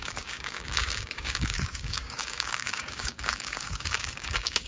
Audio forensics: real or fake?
fake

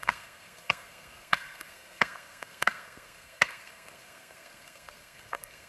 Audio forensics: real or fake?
fake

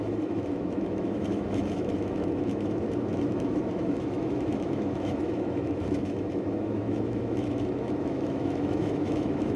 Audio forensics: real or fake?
fake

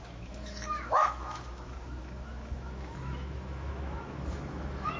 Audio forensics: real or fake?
fake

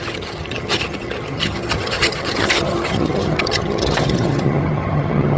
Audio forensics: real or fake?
fake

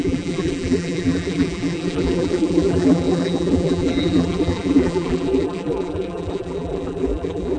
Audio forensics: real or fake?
fake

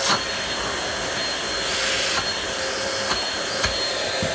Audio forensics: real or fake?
real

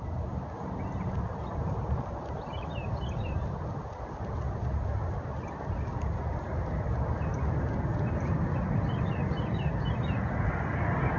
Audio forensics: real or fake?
real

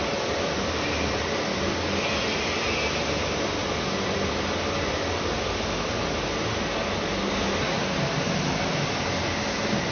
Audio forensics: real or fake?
real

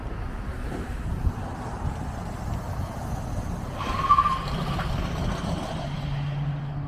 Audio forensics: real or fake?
real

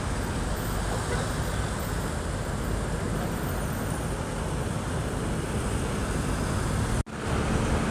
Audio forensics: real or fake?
real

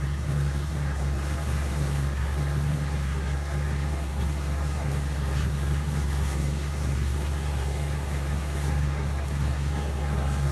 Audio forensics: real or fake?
fake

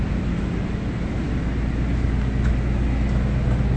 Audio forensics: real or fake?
real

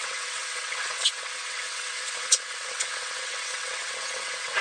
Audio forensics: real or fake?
fake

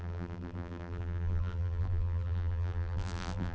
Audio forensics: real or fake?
fake